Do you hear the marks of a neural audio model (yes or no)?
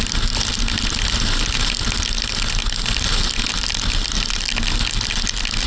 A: no